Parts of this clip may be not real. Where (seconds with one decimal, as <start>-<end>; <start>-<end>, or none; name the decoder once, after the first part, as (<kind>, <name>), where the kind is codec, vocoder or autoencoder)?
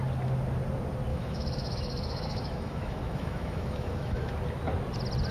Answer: 1.1-4.3 (autoencoder, DAC-VAE)